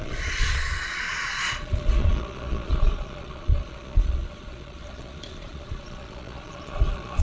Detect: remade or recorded remade